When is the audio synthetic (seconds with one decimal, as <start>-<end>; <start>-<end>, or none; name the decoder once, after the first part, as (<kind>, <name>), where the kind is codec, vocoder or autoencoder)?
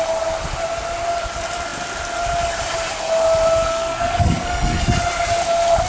3.7-4.8 (codec, SNAC)